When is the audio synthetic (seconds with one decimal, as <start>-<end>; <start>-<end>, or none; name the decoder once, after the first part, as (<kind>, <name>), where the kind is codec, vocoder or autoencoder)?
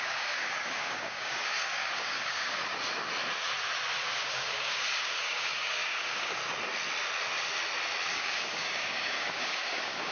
0.0-2.6 (codec, DAC); 4.2-6.4; 8.1-10.1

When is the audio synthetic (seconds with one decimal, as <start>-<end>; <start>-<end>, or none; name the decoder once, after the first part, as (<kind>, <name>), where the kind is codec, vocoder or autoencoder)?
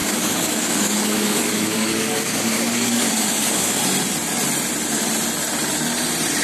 0.0-3.8 (codec, DAC)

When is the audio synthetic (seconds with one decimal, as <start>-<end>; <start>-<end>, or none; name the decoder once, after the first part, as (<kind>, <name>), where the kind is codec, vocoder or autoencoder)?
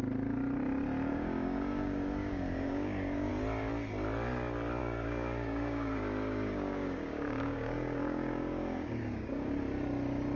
1.1-3.3 (codec, DAC); 4.8-9.5